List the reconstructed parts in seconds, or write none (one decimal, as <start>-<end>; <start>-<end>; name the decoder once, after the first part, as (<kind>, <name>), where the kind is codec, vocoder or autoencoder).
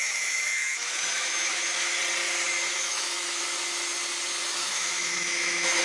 0.0-2.0 (autoencoder, DAC-VAE); 2.7-3.4; 4.6-5.8